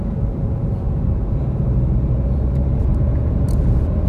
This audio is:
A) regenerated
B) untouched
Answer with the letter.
A